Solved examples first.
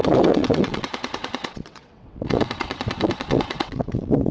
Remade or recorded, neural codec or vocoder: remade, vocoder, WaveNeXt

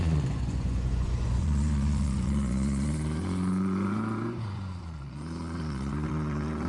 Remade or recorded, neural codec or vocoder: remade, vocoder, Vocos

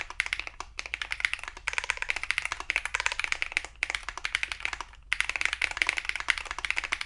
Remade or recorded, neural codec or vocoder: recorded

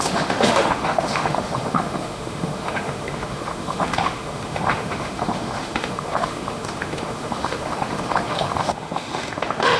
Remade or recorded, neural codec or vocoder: remade, autoencoder, DAC-VAE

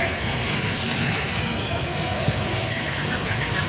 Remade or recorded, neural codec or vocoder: remade, codec, SNAC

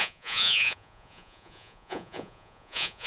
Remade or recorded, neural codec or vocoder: remade, vocoder, Vocos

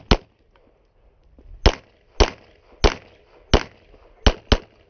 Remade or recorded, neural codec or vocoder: recorded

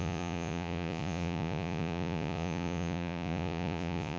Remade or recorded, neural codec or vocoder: remade, vocoder, Vocos